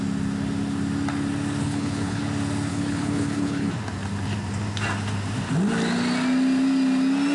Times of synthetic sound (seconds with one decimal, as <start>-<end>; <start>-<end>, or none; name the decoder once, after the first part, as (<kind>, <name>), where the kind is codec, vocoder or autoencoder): 1.6-2.2 (codec, HILCodec); 2.7-3.7